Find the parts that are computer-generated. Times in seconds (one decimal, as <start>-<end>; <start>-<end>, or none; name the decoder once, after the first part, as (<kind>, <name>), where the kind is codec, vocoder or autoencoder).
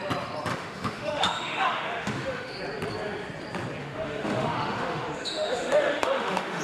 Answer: 0.5-2.6 (autoencoder, DAC-VAE); 3.8-6.6